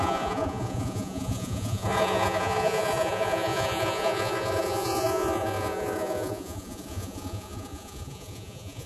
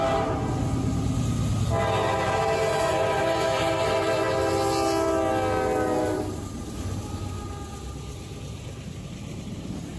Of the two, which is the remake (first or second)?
first